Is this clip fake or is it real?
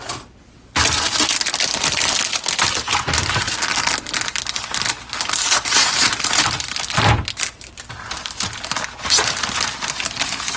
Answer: real